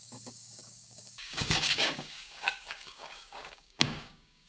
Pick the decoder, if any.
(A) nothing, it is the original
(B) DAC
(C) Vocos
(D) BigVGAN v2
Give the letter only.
B